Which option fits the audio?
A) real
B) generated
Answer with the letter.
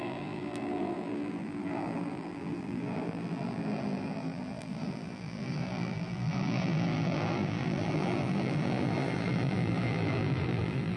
B